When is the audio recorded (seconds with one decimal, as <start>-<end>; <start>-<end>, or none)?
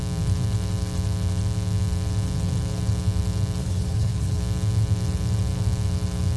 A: 0.0-3.6; 4.4-6.4